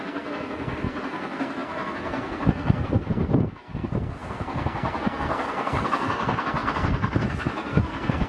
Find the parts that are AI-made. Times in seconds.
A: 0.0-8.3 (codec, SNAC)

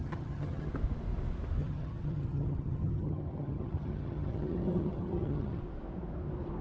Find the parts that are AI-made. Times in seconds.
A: 0.0-0.7 (vocoder, HiFi-GAN); 1.6-5.6

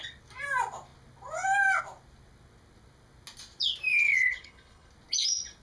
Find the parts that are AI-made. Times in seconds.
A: 3.9-4.9 (codec, HILCodec)